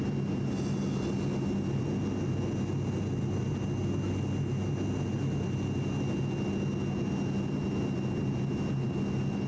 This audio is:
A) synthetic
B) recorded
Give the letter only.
B